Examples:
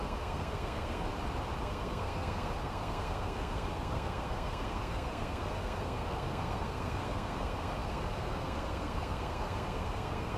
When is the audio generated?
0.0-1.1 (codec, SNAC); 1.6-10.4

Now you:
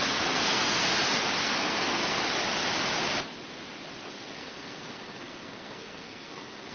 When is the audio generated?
0.0-0.9 (codec, SNAC); 1.4-2.2; 4.0-6.7

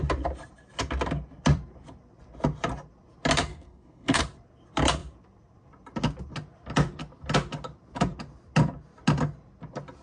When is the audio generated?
3.5-4.2 (codec, SNAC)

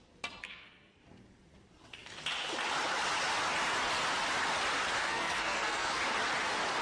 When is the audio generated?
0.4-1.0 (codec, SNAC); 5.0-6.0